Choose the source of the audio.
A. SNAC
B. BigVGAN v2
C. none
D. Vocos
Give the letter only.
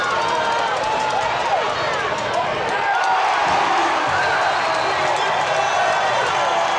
C